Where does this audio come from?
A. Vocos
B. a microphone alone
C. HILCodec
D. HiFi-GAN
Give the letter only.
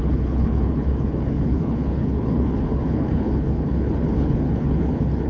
C